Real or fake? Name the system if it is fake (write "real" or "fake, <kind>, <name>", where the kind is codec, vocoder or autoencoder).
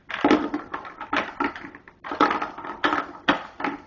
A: fake, vocoder, BigVGAN v2